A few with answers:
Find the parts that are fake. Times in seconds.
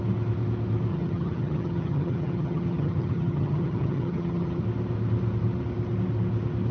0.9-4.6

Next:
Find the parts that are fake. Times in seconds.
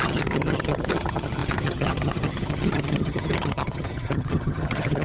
0.0-5.0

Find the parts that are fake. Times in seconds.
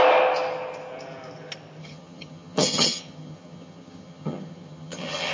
1.8-5.3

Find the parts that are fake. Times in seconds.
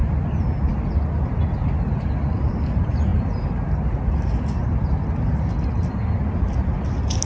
none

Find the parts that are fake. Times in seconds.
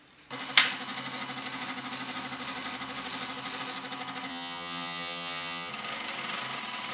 4.3-5.7